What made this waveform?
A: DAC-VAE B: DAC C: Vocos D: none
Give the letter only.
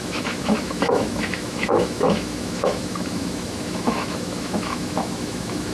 A